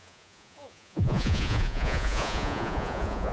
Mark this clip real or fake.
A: fake